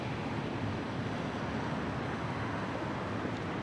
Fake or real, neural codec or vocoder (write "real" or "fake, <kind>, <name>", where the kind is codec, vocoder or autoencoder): real